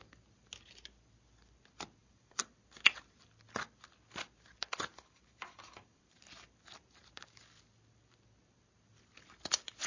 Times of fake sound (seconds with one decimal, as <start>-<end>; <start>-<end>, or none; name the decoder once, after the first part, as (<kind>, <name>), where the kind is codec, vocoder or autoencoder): 2.0-2.5 (vocoder, BigVGAN v2); 4.9-6.2